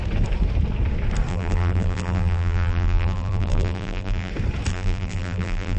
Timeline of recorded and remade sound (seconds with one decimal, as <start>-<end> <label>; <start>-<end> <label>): 0.0-1.3 recorded; 1.3-4.3 remade; 4.3-4.7 recorded; 4.7-5.8 remade